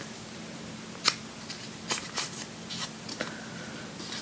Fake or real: real